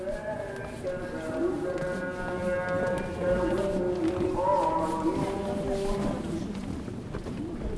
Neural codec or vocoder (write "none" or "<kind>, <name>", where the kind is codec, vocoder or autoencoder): none